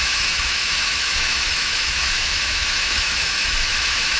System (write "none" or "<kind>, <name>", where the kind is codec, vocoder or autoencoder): autoencoder, DAC-VAE